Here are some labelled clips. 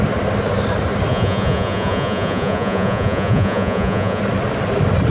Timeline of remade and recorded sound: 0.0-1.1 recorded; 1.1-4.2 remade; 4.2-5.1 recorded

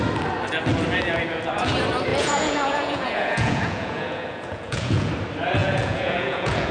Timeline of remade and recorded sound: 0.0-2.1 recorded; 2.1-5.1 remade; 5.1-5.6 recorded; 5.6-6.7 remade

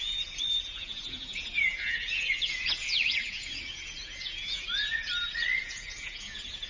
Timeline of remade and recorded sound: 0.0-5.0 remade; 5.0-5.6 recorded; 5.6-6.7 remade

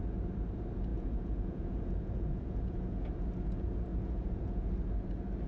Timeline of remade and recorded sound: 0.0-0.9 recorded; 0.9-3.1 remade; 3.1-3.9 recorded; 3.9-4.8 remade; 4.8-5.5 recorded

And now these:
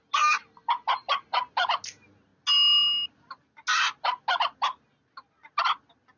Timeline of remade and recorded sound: 0.0-6.2 recorded

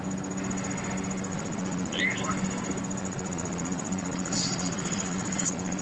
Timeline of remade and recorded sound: 0.0-1.3 recorded; 1.3-2.0 remade; 2.0-3.0 recorded; 3.0-5.8 remade

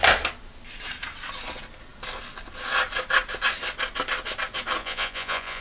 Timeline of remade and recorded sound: 0.0-4.8 recorded; 4.8-5.6 remade